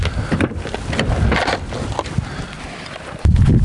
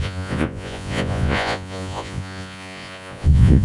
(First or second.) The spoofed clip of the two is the second